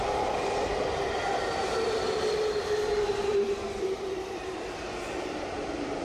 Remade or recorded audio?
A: remade